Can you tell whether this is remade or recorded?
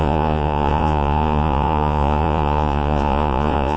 remade